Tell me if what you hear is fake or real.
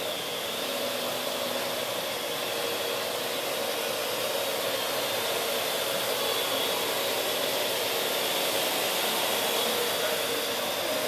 real